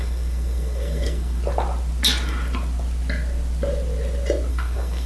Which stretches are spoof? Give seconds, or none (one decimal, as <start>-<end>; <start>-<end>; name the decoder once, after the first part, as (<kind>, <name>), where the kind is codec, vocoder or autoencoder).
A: 0.0-1.4 (codec, SNAC); 4.5-5.1